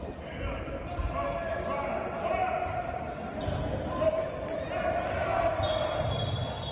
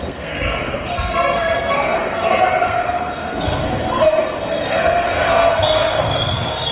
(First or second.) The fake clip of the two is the second